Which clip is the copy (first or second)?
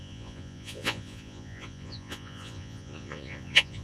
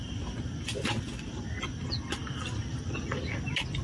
first